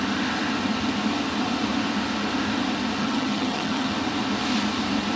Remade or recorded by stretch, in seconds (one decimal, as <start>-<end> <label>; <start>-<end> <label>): 0.0-3.0 recorded; 3.0-3.9 remade; 3.9-5.2 recorded